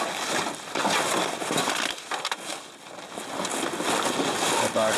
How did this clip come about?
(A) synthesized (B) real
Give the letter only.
B